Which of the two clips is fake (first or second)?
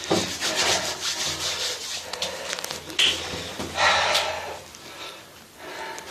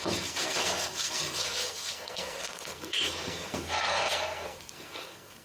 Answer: second